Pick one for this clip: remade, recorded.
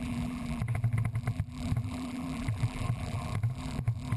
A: remade